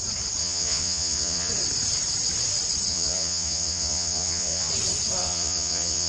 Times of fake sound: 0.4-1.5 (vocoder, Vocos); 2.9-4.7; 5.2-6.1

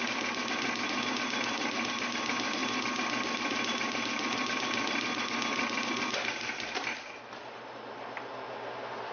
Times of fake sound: none